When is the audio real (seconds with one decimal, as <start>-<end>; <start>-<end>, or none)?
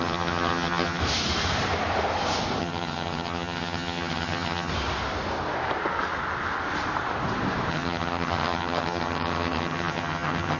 1.0-2.6; 4.7-7.7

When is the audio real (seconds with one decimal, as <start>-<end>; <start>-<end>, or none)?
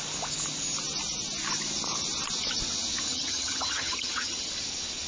0.0-3.1; 4.5-5.1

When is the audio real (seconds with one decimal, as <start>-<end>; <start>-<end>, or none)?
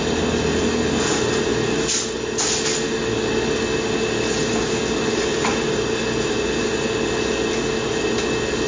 0.0-8.7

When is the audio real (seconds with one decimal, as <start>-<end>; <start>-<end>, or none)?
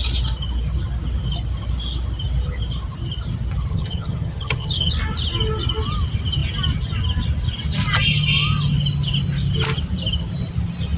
0.0-3.7; 4.9-11.0